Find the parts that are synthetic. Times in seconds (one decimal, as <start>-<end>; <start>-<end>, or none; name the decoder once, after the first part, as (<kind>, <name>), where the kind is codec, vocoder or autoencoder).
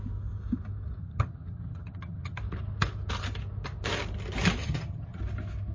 1.0-2.4 (vocoder, HiFi-GAN); 4.6-5.2